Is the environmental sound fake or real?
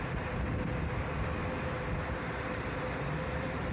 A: fake